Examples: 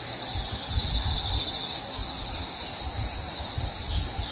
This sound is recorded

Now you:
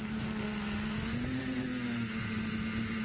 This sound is recorded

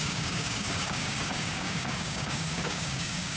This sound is remade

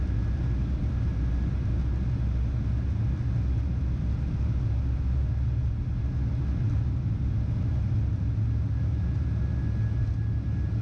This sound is recorded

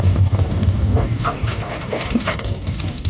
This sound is remade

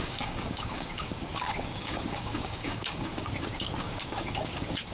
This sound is remade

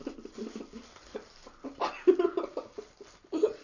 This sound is recorded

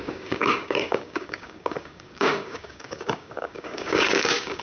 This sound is remade